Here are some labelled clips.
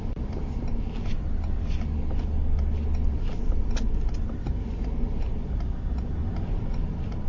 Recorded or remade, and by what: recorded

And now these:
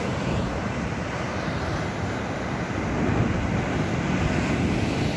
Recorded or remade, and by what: recorded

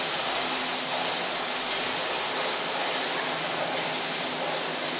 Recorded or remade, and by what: recorded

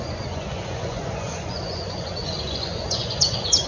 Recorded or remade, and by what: remade, vocoder, Vocos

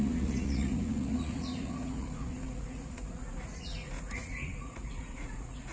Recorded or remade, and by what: remade, vocoder, Vocos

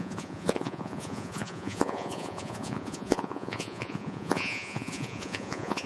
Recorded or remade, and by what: remade, vocoder, Vocos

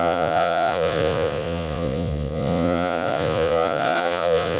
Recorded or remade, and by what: remade, vocoder, Vocos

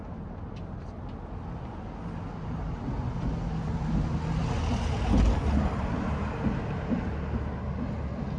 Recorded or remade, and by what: recorded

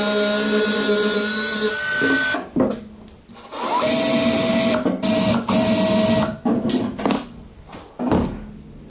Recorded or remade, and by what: recorded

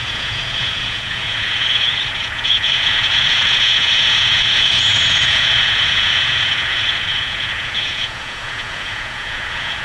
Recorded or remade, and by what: remade, vocoder, Vocos